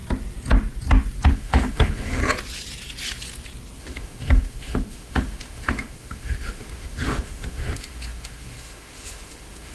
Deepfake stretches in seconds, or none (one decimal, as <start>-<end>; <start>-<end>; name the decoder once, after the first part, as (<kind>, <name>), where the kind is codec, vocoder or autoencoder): 1.3-2.2 (autoencoder, DAC-VAE); 3.8-9.7